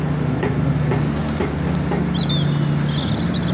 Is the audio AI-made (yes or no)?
no